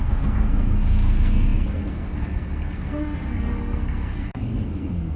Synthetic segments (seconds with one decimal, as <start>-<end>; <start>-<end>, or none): 0.0-5.2